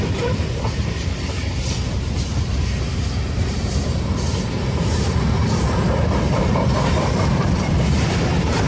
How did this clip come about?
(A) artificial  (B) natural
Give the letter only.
A